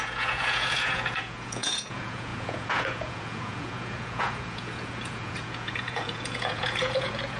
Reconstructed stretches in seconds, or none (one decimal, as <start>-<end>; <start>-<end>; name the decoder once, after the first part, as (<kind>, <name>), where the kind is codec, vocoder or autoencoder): 0.0-7.4 (vocoder, Vocos)